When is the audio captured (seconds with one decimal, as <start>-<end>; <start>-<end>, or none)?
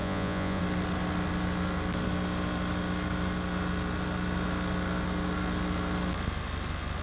0.6-7.0